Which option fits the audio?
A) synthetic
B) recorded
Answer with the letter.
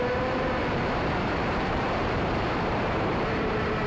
A